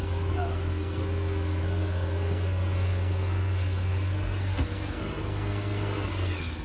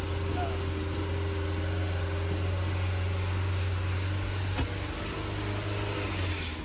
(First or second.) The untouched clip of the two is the second